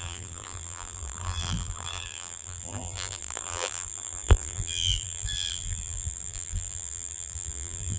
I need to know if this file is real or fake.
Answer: fake